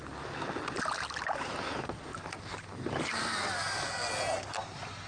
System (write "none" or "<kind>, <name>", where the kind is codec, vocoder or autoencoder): none